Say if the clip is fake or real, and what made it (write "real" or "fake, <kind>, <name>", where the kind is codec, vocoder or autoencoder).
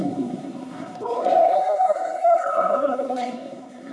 fake, codec, SNAC